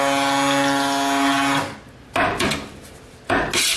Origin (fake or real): real